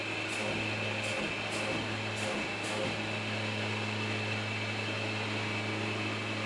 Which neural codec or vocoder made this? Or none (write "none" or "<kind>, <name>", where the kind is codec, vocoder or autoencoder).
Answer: none